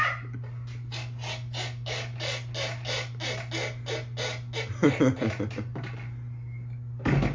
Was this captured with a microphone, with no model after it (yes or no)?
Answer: yes